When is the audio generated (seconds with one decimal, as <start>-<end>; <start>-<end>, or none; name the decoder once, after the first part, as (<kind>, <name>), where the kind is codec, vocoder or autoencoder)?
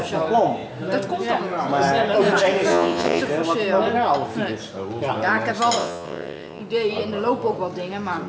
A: 2.7-3.2 (vocoder, WaveNeXt); 5.8-6.6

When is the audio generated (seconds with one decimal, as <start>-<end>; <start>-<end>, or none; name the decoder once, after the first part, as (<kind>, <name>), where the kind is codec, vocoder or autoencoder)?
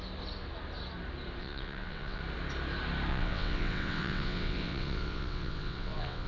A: 1.4-2.2 (vocoder, WaveNeXt); 3.1-6.3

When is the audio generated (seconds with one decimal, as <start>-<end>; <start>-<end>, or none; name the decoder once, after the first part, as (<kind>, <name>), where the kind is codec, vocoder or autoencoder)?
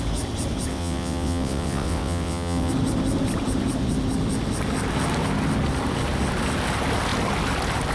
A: 0.7-2.7 (vocoder, WaveNeXt)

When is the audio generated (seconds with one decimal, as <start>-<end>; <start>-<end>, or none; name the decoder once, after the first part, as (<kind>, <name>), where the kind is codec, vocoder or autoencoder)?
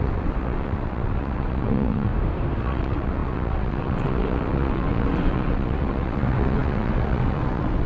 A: 0.0-2.1 (vocoder, WaveNeXt); 2.6-7.9